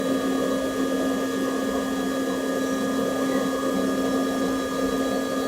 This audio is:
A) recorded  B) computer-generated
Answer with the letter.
A